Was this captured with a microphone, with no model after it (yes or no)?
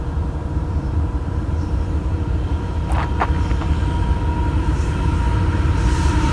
yes